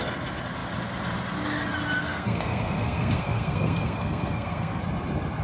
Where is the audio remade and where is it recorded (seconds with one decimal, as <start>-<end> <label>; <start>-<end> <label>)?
0.0-2.0 recorded; 2.0-4.8 remade; 4.8-5.4 recorded